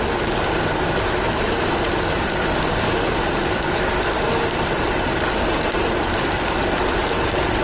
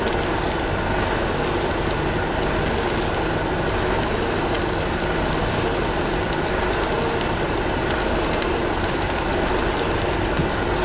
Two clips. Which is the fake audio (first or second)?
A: first